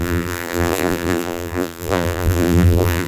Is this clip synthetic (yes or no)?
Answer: yes